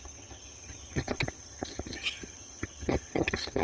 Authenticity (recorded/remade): remade